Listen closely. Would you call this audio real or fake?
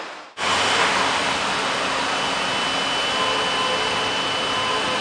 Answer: real